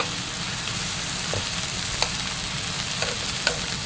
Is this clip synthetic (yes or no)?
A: no